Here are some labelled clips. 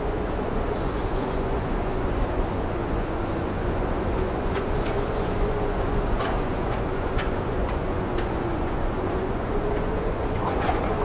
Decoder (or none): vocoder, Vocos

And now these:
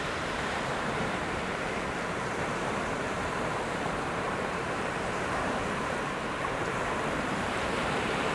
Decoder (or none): vocoder, BigVGAN v2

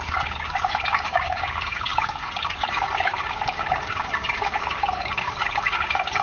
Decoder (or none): codec, DAC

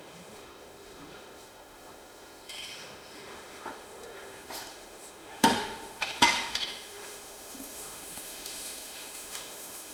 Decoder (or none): autoencoder, DAC-VAE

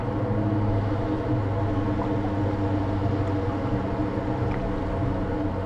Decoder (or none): none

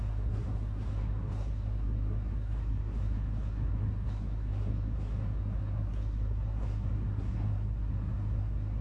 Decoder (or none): codec, SNAC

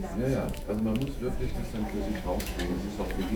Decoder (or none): autoencoder, DAC-VAE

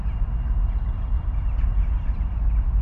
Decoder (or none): none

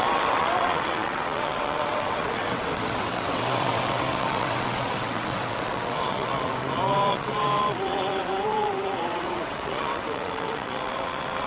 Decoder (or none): vocoder, WaveNeXt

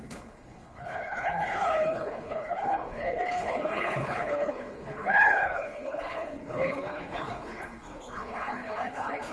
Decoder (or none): codec, HILCodec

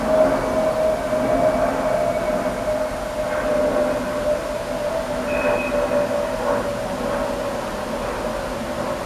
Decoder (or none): none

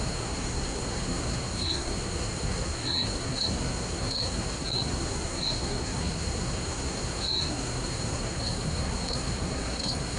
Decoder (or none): codec, SNAC